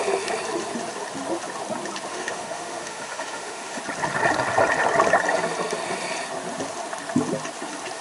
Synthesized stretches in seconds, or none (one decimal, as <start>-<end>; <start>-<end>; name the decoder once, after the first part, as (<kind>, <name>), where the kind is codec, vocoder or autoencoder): 2.1-3.8 (autoencoder, DAC-VAE)